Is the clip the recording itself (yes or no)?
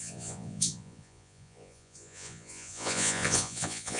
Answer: no